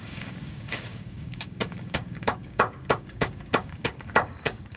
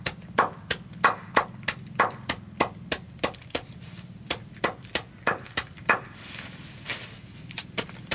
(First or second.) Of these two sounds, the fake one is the first